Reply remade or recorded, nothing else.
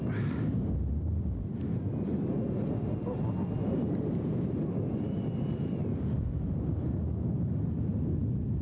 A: recorded